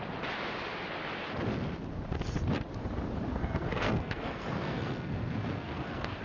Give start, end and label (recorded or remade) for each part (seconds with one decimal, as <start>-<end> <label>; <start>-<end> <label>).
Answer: 0.0-3.3 recorded; 3.3-6.2 remade